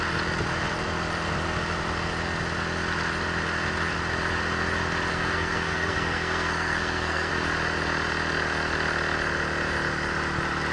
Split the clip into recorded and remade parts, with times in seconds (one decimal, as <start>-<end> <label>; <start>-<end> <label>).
0.0-5.1 recorded; 5.1-7.3 remade; 7.3-10.7 recorded